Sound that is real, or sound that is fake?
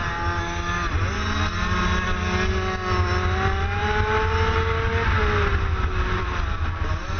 real